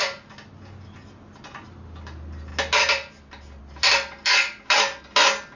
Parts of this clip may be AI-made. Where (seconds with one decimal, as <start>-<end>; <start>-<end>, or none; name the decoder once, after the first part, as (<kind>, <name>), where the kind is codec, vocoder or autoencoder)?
none